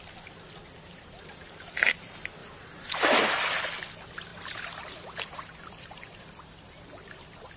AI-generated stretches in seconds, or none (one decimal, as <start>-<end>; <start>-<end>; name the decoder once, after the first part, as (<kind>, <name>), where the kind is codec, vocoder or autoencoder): 0.9-1.6 (vocoder, BigVGAN v2); 4.3-6.2